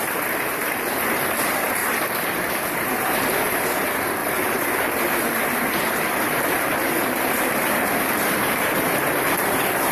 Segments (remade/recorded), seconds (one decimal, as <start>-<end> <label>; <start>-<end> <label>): 0.0-1.8 remade; 1.8-2.5 recorded; 2.5-9.9 remade

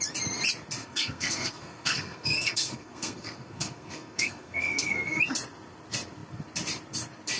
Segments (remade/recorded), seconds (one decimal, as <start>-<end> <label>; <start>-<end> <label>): 0.0-0.8 recorded; 0.8-5.2 remade; 5.2-7.4 recorded

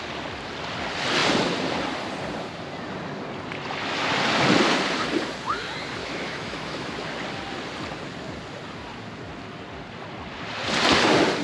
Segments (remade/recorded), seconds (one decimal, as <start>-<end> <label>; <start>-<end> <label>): 0.0-6.0 recorded; 6.0-6.9 remade; 6.9-11.4 recorded

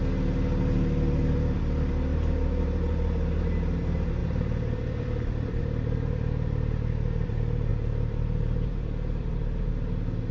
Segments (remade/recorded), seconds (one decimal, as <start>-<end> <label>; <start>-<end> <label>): 0.0-4.2 recorded; 4.2-5.6 remade; 5.6-7.7 recorded; 7.7-9.7 remade; 9.7-10.3 recorded

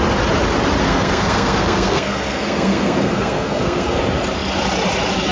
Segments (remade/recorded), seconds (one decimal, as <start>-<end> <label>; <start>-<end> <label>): 0.0-0.8 recorded; 0.8-4.0 remade; 4.0-5.3 recorded